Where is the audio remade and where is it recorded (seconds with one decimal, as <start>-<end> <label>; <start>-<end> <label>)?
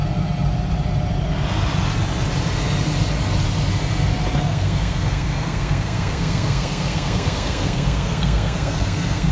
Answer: 0.0-4.4 recorded; 4.4-9.3 remade